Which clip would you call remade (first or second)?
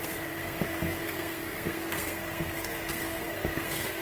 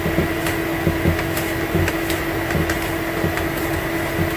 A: first